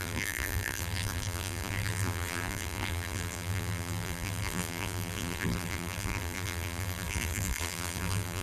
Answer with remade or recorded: remade